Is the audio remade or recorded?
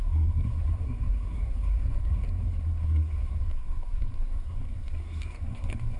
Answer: remade